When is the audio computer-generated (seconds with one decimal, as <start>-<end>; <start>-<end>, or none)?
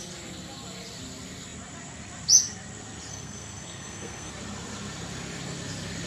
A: 3.1-4.3